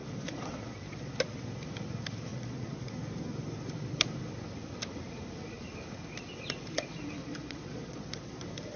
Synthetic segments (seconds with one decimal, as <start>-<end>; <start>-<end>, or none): 0.0-1.1; 2.3-2.9; 7.2-8.4